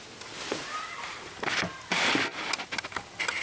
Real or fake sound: real